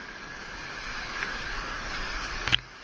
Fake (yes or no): yes